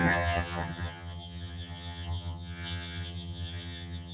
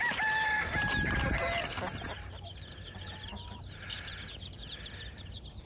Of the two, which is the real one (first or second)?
second